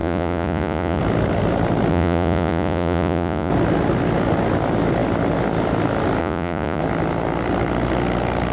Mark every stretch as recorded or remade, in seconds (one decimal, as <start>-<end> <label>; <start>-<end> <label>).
0.0-1.0 remade; 1.0-1.9 recorded; 1.9-3.5 remade; 3.5-6.2 recorded; 6.2-6.8 remade; 6.8-8.5 recorded